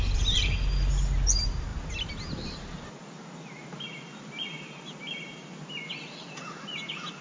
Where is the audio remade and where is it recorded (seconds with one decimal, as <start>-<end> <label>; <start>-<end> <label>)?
0.0-7.2 recorded